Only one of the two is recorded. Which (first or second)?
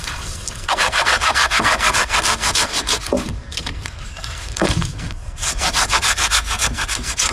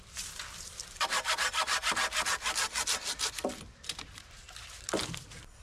second